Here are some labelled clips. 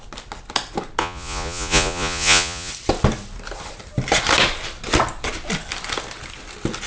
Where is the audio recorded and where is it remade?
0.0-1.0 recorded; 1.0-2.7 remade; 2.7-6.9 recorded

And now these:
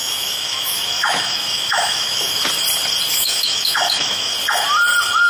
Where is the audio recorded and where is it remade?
0.0-2.4 remade; 2.4-3.1 recorded; 3.1-4.3 remade; 4.3-5.3 recorded

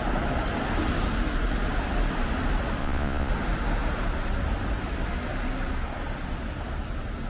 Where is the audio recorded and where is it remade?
0.0-2.8 recorded; 2.8-3.3 remade; 3.3-7.3 recorded

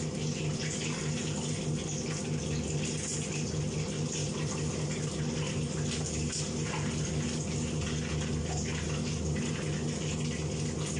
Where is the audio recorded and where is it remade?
0.0-11.0 recorded

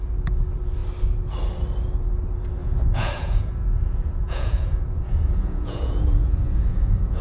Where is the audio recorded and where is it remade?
0.0-2.6 recorded; 2.6-7.2 remade

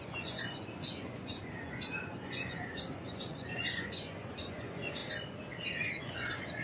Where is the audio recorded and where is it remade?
0.0-5.0 remade; 5.0-6.0 recorded; 6.0-6.6 remade

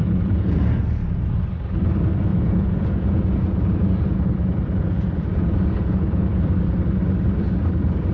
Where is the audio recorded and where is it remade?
0.0-0.6 remade; 0.6-2.3 recorded; 2.3-6.4 remade; 6.4-8.1 recorded

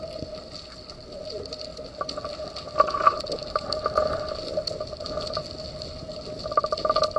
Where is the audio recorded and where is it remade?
0.0-1.7 recorded; 1.7-4.3 remade; 4.3-6.1 recorded; 6.1-6.8 remade; 6.8-7.2 recorded